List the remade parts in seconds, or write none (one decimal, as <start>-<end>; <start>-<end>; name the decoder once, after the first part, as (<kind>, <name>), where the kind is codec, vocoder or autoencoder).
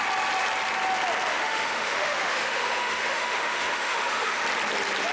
1.3-4.4 (autoencoder, DAC-VAE)